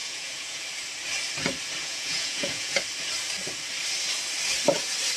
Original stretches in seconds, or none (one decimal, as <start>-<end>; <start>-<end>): 0.6-1.8; 2.8-5.2